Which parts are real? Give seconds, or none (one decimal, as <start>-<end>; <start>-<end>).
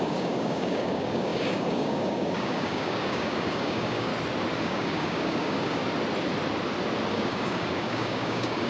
4.1-4.6; 5.8-7.1